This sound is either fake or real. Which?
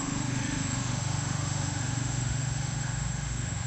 fake